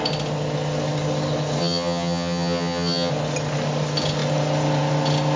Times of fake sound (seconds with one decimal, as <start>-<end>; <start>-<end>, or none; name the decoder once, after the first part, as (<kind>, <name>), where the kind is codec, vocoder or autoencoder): 1.6-3.1 (vocoder, HiFi-GAN)

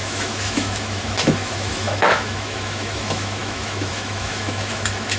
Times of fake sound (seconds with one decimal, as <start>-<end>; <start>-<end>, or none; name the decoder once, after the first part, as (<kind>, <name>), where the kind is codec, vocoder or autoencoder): 0.0-5.2 (autoencoder, DAC-VAE)

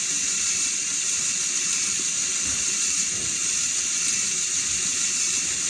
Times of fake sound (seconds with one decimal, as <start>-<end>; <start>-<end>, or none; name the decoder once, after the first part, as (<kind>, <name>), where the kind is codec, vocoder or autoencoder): none